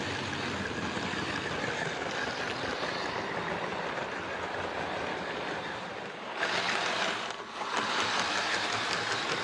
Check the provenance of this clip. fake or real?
real